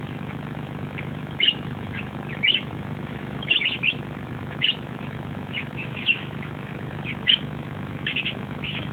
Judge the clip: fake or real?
fake